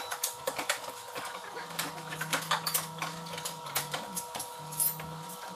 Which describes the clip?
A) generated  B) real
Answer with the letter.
A